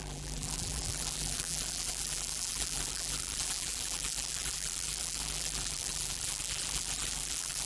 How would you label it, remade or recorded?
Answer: remade